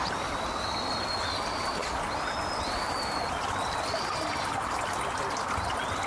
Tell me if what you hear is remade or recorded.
recorded